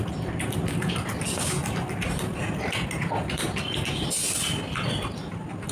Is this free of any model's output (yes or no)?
yes